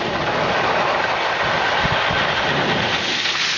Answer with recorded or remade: recorded